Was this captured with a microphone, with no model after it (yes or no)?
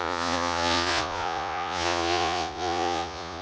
no